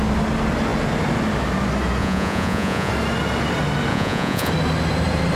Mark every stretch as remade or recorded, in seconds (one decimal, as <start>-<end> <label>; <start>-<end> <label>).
0.0-2.0 recorded; 2.0-2.9 remade; 2.9-3.9 recorded; 3.9-4.5 remade; 4.5-5.4 recorded